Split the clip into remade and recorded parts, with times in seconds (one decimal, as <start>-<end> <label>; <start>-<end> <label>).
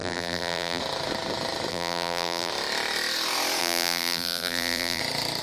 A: 0.0-0.8 remade; 0.8-1.7 recorded; 1.7-2.5 remade; 2.5-3.6 recorded; 3.6-5.0 remade; 5.0-5.4 recorded